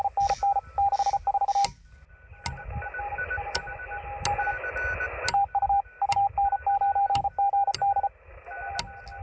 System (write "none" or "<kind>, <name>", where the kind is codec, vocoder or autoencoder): none